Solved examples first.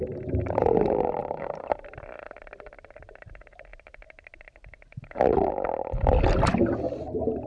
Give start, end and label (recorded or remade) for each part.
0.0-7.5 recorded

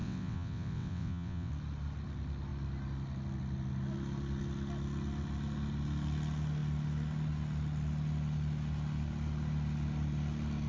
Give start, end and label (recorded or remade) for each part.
0.0-1.5 remade; 1.5-10.7 recorded